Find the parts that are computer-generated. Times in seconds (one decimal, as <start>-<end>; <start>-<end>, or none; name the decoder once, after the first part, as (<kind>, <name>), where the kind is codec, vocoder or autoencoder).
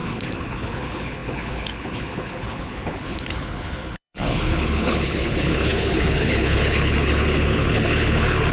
0.0-8.5 (codec, HILCodec)